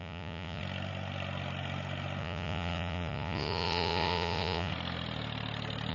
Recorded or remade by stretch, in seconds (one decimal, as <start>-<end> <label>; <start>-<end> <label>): 0.0-0.6 remade; 0.6-2.2 recorded; 2.2-4.7 remade; 4.7-5.9 recorded

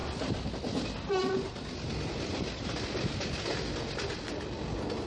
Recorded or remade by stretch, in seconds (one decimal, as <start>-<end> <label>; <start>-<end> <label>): 0.0-3.1 remade; 3.1-5.1 recorded

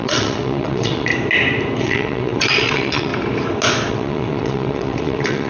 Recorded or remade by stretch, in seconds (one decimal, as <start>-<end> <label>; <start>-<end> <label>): 0.0-1.1 remade; 1.1-1.8 recorded; 1.8-3.1 remade; 3.1-3.9 recorded; 3.9-5.5 remade

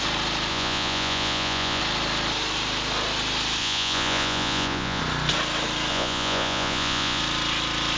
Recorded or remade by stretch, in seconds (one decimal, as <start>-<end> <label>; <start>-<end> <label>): 0.0-0.5 recorded; 0.5-1.8 remade; 1.8-3.6 recorded; 3.6-5.0 remade; 5.0-5.9 recorded; 5.9-7.2 remade; 7.2-8.0 recorded

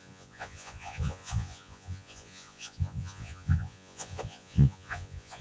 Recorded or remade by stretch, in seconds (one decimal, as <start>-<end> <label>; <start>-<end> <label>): 0.0-5.4 remade

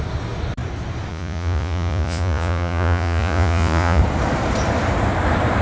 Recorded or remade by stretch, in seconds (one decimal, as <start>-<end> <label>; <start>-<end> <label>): 0.0-1.1 recorded; 1.1-4.0 remade; 4.0-5.6 recorded